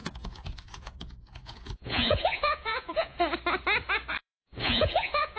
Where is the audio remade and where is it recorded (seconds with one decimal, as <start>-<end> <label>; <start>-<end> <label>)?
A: 0.0-3.2 remade; 3.2-4.2 recorded; 4.2-5.4 remade